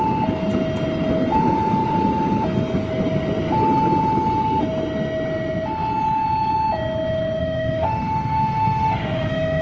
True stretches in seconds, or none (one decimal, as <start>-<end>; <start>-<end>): 0.0-7.4